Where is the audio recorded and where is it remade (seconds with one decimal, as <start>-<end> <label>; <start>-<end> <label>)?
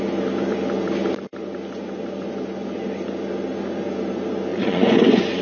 0.0-4.5 recorded; 4.5-5.4 remade